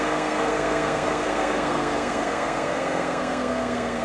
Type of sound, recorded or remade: remade